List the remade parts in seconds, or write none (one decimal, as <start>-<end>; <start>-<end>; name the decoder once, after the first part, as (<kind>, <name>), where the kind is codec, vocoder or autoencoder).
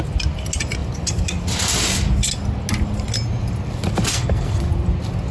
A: 4.1-4.6 (codec, SNAC)